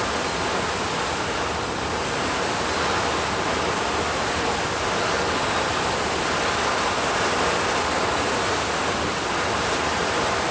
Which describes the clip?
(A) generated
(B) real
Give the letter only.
B